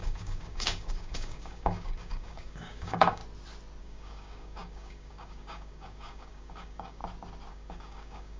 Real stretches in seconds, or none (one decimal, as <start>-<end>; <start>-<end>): 3.2-3.8; 7.0-7.5